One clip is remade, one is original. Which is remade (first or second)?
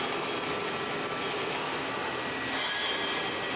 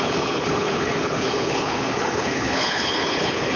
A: second